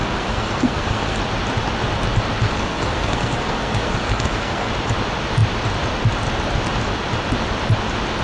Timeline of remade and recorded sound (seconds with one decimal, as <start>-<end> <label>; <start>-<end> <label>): 0.0-1.2 remade; 1.2-2.4 recorded; 2.4-4.7 remade; 4.7-8.2 recorded